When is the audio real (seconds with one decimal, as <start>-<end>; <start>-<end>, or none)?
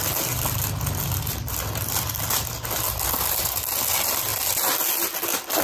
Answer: 0.0-5.6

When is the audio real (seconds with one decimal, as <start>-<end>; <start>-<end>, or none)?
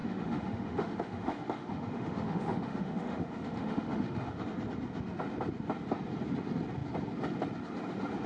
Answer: 4.4-8.3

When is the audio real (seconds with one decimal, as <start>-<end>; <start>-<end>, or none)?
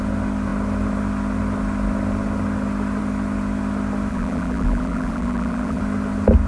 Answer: 0.0-4.1; 5.8-6.5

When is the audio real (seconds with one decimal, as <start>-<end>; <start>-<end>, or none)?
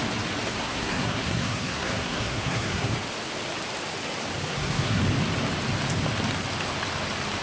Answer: 0.0-0.6; 2.9-4.5; 5.0-7.4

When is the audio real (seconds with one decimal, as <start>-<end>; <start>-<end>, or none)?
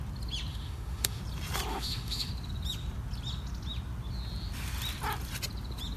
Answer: 0.0-0.5; 1.2-1.7; 2.3-6.0